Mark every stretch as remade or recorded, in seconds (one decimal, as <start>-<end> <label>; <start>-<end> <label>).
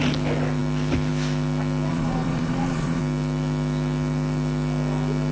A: 0.0-1.9 recorded; 1.9-3.0 remade; 3.0-5.3 recorded